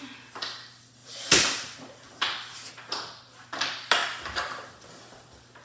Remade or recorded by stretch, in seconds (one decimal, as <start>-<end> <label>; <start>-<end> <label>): 0.0-1.0 recorded; 1.0-2.7 remade; 2.7-5.6 recorded